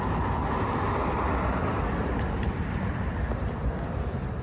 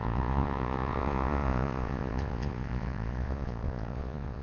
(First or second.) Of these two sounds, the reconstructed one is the second